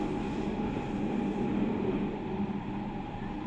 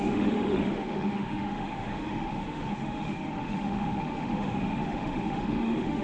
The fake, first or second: second